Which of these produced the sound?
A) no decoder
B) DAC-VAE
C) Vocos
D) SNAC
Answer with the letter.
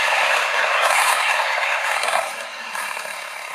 D